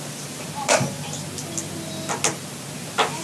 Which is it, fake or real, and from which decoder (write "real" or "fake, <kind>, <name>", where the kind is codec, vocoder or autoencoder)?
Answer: real